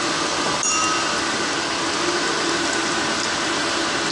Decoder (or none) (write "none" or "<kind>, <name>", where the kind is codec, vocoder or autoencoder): none